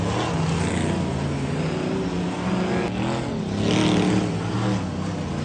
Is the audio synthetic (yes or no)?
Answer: no